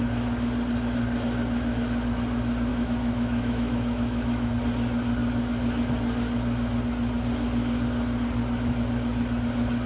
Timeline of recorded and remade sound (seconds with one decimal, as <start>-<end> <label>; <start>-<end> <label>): 0.0-2.7 recorded; 2.7-4.5 remade; 4.5-9.9 recorded